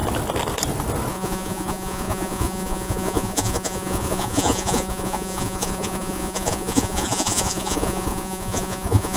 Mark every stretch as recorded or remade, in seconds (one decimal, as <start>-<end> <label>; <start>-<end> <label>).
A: 0.0-1.1 recorded; 1.1-9.2 remade